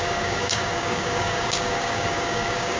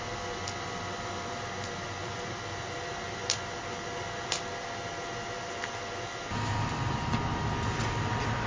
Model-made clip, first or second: first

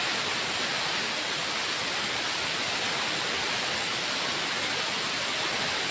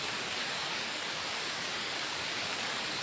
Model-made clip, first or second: second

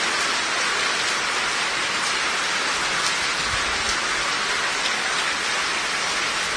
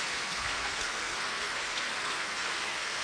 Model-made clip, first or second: second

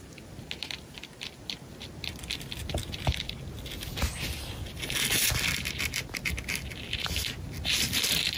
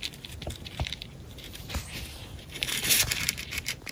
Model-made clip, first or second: second